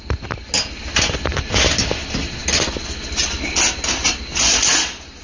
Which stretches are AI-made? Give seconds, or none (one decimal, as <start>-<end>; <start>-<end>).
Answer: none